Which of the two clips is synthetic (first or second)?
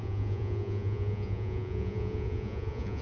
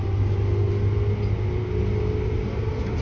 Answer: first